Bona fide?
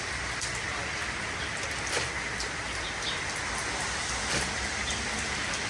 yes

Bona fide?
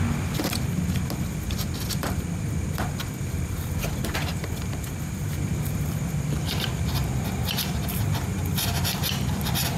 yes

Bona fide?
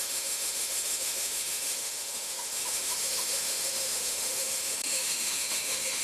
no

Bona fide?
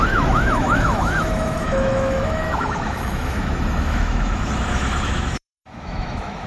no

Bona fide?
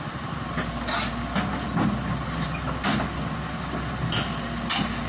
yes